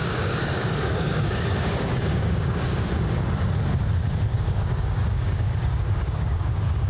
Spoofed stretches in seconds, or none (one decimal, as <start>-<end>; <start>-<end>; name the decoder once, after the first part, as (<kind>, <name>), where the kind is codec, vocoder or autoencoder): 0.0-2.9 (codec, DAC); 4.3-6.9